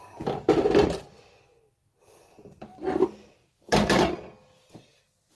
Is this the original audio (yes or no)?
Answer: yes